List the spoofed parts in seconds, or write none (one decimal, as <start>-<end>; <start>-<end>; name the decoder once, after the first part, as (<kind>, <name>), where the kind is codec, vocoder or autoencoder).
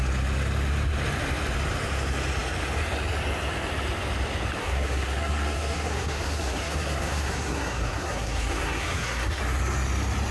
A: 4.6-9.4 (codec, SNAC)